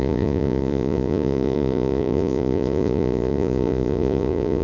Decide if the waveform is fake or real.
fake